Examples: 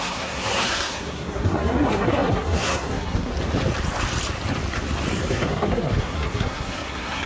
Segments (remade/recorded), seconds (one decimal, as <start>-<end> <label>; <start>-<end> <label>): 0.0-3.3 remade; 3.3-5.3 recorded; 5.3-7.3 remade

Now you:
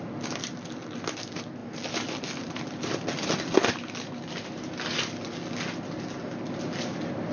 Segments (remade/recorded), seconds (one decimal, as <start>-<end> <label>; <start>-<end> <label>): 0.0-7.3 recorded

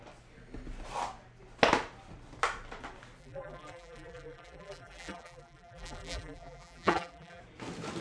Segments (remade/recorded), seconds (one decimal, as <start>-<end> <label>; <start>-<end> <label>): 0.0-3.2 recorded; 3.2-7.4 remade; 7.4-8.0 recorded

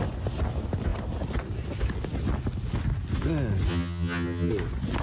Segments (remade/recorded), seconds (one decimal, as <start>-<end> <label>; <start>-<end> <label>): 0.0-3.7 recorded; 3.7-4.5 remade; 4.5-5.0 recorded

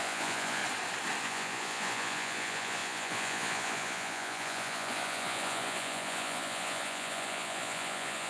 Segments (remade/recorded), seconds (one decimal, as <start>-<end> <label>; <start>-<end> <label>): 0.0-0.6 remade; 0.6-1.2 recorded; 1.2-8.3 remade

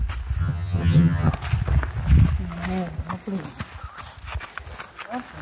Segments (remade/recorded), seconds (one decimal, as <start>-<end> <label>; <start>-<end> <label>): 0.0-0.4 recorded; 0.4-1.3 remade; 1.3-5.4 recorded

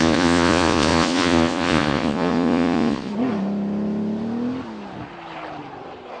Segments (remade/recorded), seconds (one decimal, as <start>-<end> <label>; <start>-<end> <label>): 0.0-3.1 remade; 3.1-6.2 recorded

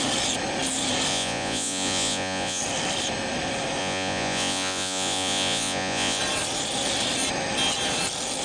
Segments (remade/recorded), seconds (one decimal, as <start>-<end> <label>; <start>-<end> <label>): 0.0-1.1 recorded; 1.1-2.6 remade; 2.6-3.8 recorded; 3.8-6.2 remade; 6.2-8.4 recorded